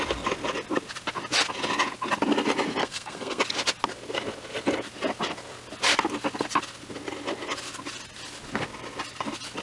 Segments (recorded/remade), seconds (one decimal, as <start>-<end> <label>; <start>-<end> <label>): 0.0-2.8 recorded; 2.8-3.4 remade; 3.4-9.6 recorded